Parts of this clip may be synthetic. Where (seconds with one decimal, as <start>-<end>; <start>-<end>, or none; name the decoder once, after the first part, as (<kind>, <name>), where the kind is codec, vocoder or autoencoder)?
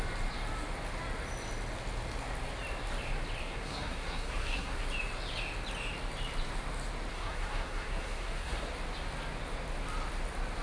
3.4-4.8 (codec, SNAC); 7.1-8.6